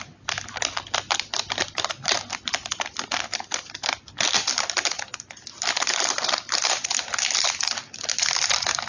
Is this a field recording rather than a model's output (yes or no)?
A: yes